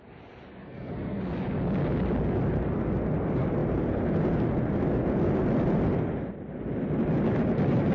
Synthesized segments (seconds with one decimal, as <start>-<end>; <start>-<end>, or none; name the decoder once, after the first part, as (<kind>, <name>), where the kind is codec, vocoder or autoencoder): 0.5-1.2 (codec, SNAC)